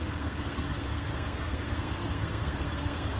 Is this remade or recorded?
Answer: remade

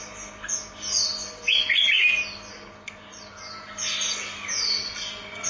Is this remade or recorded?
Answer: recorded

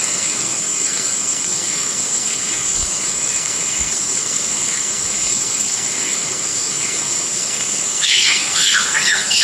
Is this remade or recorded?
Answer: remade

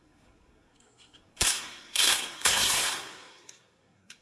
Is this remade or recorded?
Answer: remade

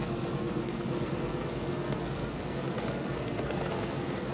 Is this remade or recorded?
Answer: remade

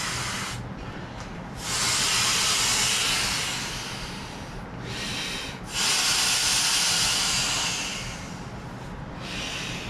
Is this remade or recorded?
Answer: recorded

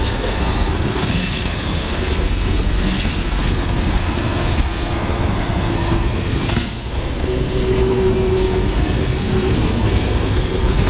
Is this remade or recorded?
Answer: remade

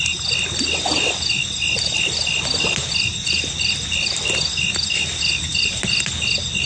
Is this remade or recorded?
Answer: recorded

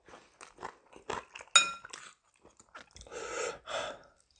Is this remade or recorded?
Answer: recorded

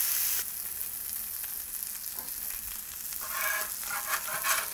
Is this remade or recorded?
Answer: recorded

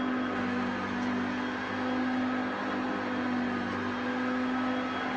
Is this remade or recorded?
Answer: recorded